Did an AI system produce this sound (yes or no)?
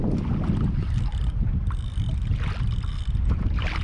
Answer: no